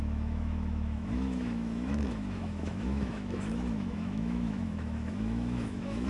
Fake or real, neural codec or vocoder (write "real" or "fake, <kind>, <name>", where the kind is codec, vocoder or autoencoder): fake, autoencoder, DAC-VAE